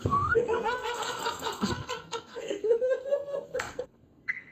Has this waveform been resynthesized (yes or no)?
yes